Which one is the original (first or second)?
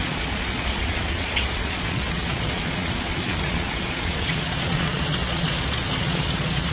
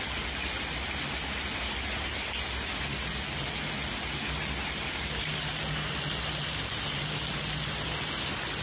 second